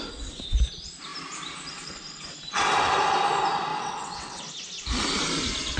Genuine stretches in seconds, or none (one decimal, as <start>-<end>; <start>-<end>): 0.0-3.7; 4.4-5.8